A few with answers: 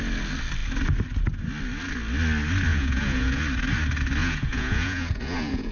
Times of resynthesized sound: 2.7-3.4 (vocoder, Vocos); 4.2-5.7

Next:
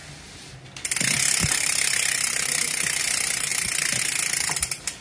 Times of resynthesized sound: none

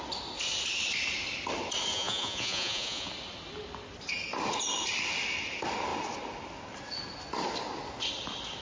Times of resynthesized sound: 1.9-3.1 (vocoder, Vocos)

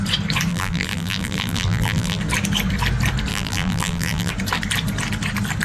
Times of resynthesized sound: 0.5-2.2 (vocoder, BigVGAN v2); 3.3-4.3

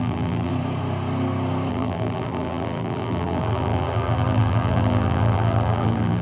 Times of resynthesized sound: 0.0-0.5 (vocoder, BigVGAN v2); 1.7-6.2

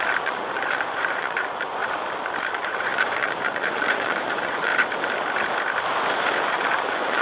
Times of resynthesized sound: 0.0-1.8 (vocoder, Vocos); 2.4-4.7; 6.5-7.2

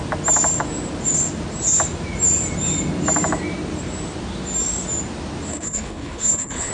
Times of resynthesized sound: 5.5-6.7 (codec, HILCodec)